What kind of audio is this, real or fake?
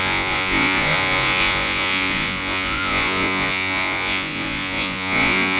fake